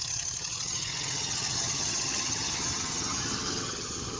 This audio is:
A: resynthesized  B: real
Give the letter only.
A